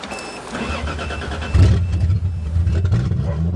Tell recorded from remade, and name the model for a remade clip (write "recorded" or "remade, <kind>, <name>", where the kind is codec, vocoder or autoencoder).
recorded